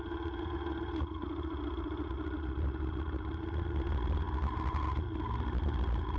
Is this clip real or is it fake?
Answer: real